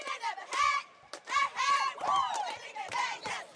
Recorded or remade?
remade